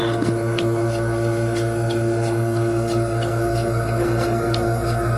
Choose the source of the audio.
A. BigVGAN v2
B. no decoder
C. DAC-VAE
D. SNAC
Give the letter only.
D